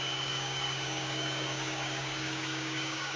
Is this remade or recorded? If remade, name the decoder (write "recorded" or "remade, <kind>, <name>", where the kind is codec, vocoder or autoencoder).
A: remade, codec, DAC